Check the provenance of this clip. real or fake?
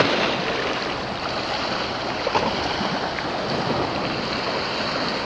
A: real